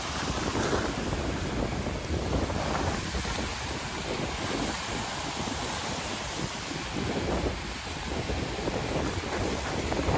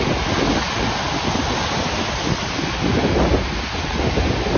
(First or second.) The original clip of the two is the second